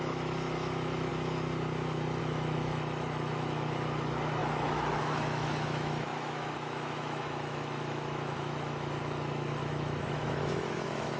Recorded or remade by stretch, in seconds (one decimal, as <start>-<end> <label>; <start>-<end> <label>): 0.0-1.1 remade; 1.1-2.2 recorded; 2.2-11.2 remade